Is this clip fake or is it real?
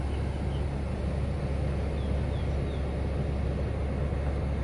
real